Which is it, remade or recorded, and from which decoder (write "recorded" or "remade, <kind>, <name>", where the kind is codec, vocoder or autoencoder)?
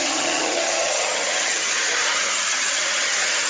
remade, vocoder, HiFi-GAN